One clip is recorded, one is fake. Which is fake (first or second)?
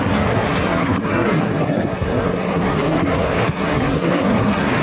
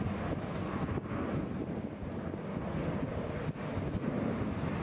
first